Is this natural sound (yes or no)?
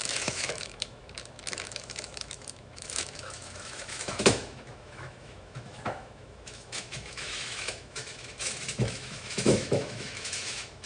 no